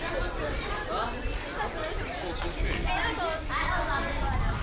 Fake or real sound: real